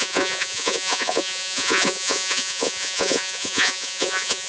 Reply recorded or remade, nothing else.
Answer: remade